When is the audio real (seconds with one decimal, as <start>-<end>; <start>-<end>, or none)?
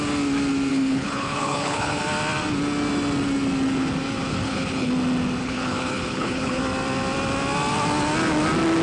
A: 0.0-0.7; 2.0-4.3; 4.9-5.4; 6.6-8.8